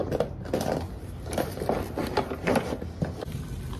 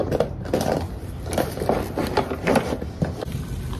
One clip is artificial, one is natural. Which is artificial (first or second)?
second